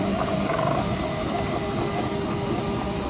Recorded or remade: recorded